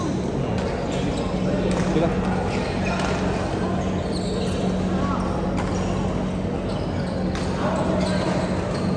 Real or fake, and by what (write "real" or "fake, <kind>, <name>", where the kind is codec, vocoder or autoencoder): real